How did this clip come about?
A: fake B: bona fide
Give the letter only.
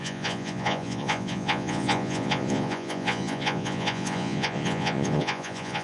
A